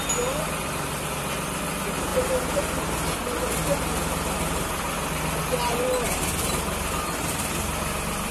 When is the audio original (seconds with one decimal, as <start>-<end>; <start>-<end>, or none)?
0.0-8.3